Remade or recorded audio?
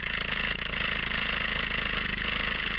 remade